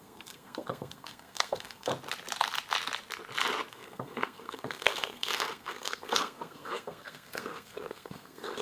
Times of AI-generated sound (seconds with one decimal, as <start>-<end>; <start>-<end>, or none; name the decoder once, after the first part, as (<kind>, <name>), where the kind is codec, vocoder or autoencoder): 0.0-1.9 (codec, SNAC); 3.7-8.6